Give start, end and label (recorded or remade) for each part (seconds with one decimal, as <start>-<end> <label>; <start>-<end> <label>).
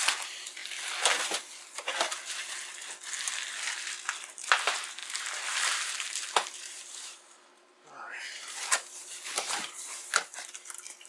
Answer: 0.0-0.6 remade; 0.6-4.3 recorded; 4.3-10.3 remade; 10.3-11.1 recorded